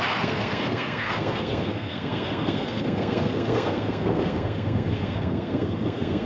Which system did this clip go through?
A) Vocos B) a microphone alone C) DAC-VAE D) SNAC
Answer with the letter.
D